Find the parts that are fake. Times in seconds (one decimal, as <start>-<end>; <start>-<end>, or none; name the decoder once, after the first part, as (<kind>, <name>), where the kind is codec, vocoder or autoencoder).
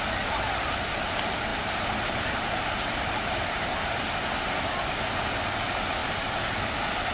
1.5-3.5 (vocoder, BigVGAN v2)